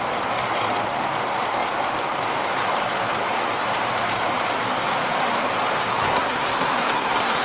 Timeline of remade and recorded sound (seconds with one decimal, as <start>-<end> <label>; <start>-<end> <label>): 0.0-6.0 recorded; 6.0-7.4 remade